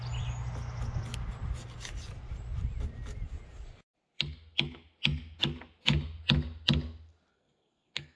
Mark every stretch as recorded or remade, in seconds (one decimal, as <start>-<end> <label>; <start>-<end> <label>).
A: 0.0-7.3 recorded; 7.3-8.2 remade